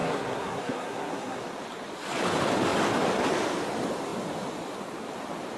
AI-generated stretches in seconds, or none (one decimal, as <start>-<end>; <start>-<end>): 0.0-1.4